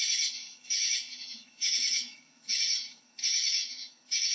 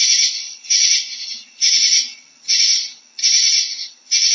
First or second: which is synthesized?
first